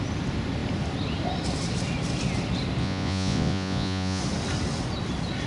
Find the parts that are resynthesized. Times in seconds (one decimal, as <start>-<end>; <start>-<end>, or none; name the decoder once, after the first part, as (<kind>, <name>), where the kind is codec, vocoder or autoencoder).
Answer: 2.8-4.2 (vocoder, Vocos)